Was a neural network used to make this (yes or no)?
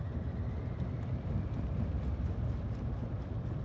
no